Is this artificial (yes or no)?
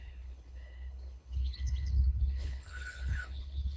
yes